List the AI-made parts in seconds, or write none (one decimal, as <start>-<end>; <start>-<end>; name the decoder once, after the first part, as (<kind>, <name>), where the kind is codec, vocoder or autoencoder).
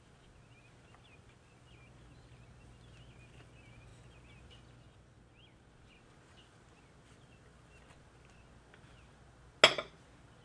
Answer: none